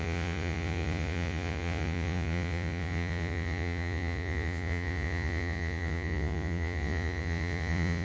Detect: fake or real fake